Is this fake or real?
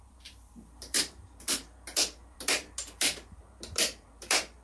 fake